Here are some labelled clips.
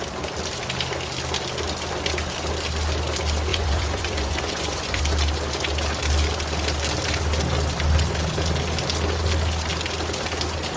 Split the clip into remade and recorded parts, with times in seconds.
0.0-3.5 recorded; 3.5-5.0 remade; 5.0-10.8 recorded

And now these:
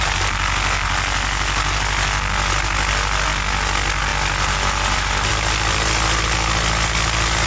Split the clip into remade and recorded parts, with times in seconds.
0.0-7.5 recorded

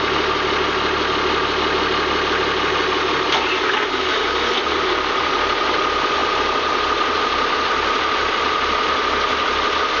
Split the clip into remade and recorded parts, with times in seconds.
0.0-10.0 recorded

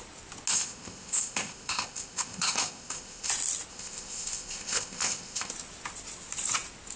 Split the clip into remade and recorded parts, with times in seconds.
0.0-0.5 recorded; 0.5-3.3 remade; 3.3-3.7 recorded; 3.7-5.5 remade; 5.5-7.0 recorded

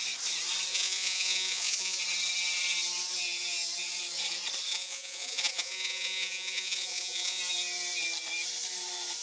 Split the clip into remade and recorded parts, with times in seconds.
0.0-0.7 recorded; 0.7-2.0 remade; 2.0-4.7 recorded; 4.7-7.4 remade; 7.4-9.2 recorded

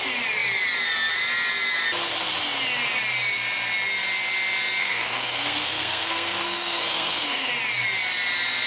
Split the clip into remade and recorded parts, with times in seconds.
0.0-4.8 recorded; 4.8-7.5 remade; 7.5-8.7 recorded

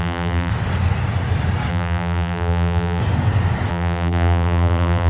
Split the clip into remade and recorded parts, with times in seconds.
0.0-0.5 remade; 0.5-1.7 recorded; 1.7-3.0 remade; 3.0-3.7 recorded; 3.7-5.1 remade

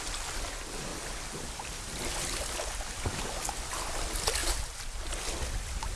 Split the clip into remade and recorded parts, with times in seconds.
0.0-6.0 recorded